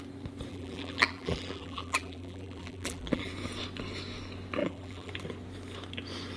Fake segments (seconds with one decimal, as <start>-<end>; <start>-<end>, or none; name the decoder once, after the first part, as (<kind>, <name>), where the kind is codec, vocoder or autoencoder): 0.5-3.3 (vocoder, BigVGAN v2); 4.6-5.1

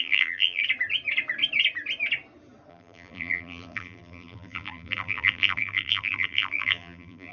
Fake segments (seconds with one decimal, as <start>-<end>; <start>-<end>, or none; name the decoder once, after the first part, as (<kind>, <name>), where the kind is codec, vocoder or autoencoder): 0.0-0.6 (vocoder, BigVGAN v2); 2.7-7.3

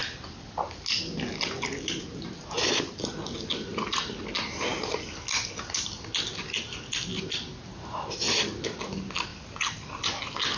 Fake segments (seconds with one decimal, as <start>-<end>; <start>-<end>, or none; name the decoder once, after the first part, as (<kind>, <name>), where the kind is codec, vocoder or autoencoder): none

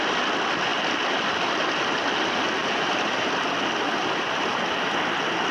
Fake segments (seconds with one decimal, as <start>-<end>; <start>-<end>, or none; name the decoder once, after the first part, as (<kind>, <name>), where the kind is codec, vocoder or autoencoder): 2.6-3.3 (vocoder, BigVGAN v2)

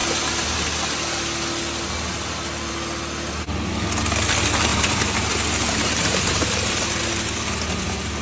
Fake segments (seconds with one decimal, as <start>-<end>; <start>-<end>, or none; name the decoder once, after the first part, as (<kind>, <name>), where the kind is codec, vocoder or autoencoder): 4.7-7.1 (vocoder, BigVGAN v2)

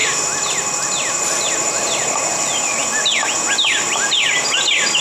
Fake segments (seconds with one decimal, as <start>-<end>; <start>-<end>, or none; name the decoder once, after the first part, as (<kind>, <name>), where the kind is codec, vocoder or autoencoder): 0.0-1.5 (vocoder, BigVGAN v2)

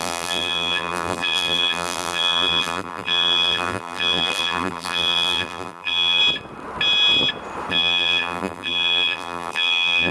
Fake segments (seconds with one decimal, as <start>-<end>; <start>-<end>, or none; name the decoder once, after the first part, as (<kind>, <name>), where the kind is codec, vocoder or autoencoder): 0.0-6.2 (vocoder, BigVGAN v2); 7.7-10.1

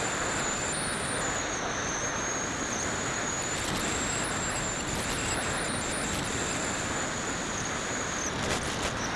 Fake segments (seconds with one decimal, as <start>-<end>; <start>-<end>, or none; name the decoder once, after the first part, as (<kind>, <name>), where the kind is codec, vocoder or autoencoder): none